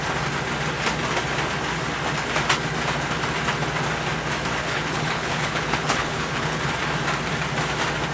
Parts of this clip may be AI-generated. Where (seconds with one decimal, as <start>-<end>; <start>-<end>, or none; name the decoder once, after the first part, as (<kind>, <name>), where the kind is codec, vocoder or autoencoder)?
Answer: 4.6-6.7 (codec, HILCodec)